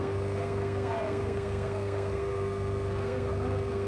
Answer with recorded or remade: remade